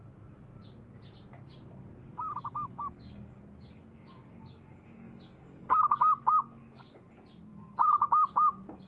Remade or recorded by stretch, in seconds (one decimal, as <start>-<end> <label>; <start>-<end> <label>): 0.0-2.0 recorded; 2.0-7.1 remade; 7.1-7.5 recorded; 7.5-8.9 remade